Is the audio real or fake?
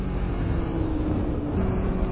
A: real